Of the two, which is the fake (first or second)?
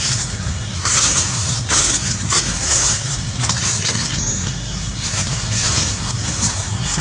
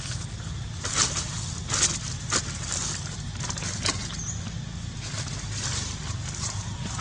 first